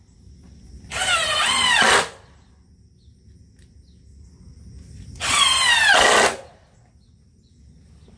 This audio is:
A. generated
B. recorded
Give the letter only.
B